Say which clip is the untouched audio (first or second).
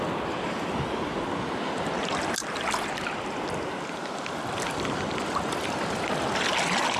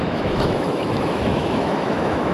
first